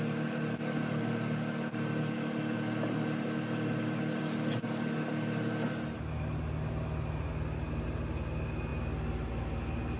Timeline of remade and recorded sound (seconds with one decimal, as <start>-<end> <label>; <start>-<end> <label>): 0.0-10.0 recorded